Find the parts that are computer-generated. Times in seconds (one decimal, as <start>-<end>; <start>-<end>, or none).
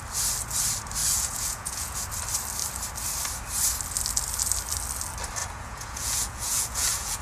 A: 1.0-2.1; 5.4-7.2